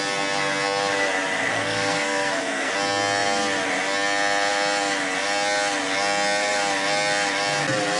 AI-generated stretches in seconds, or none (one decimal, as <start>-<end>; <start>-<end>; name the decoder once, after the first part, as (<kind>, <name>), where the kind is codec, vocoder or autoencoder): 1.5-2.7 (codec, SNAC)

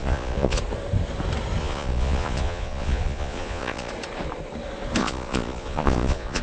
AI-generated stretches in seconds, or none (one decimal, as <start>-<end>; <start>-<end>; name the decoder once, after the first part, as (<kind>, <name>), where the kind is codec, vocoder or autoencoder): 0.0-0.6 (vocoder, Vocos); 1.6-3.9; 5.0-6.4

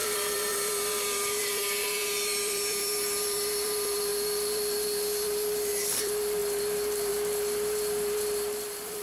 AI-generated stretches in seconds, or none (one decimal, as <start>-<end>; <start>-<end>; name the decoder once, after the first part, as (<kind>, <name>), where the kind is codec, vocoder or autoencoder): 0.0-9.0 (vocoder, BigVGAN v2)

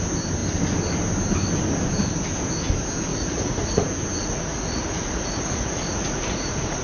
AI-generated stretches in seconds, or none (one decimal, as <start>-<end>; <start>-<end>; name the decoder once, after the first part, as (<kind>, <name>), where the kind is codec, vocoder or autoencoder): 3.1-3.8 (vocoder, Vocos); 4.2-6.8

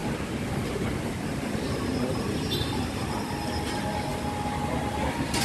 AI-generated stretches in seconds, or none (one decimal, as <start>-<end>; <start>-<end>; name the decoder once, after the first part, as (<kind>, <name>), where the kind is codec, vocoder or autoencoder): 0.0-3.2 (vocoder, BigVGAN v2)

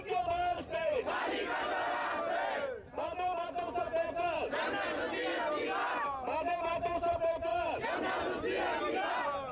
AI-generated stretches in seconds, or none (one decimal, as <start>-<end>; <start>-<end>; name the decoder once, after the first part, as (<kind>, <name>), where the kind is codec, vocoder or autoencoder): 0.5-1.2 (vocoder, Vocos)